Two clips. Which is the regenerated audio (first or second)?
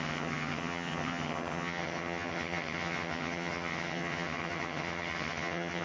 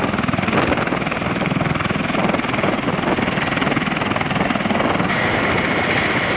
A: first